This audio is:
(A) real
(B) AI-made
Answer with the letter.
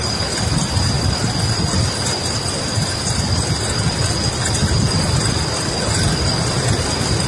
A